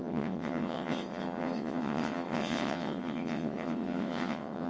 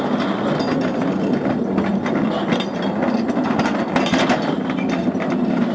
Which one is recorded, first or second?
second